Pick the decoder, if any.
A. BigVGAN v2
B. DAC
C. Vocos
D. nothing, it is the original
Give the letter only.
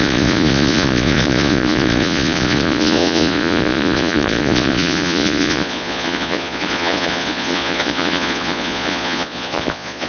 C